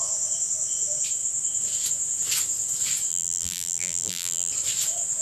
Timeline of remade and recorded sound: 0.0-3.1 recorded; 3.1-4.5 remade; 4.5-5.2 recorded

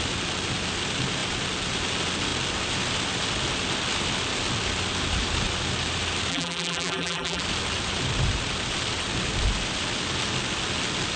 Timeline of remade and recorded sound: 0.0-6.3 recorded; 6.3-7.4 remade; 7.4-11.2 recorded

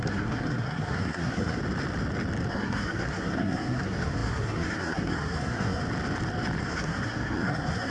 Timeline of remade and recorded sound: 0.0-1.6 remade; 1.6-2.5 recorded; 2.5-5.8 remade; 5.8-6.6 recorded; 6.6-7.9 remade

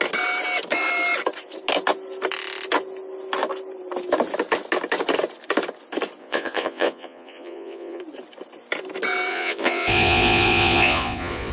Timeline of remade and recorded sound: 0.0-6.2 recorded; 6.2-8.0 remade; 8.0-9.3 recorded; 9.3-11.5 remade

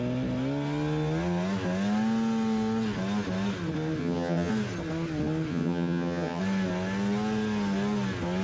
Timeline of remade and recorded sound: 0.0-4.0 recorded; 4.0-4.5 remade; 4.5-5.5 recorded; 5.5-6.4 remade; 6.4-8.4 recorded

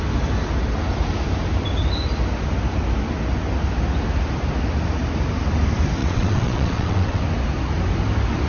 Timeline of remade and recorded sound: 0.0-6.0 recorded; 6.0-7.2 remade; 7.2-8.5 recorded

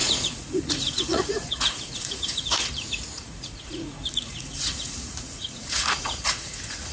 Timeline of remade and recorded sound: 0.0-6.9 remade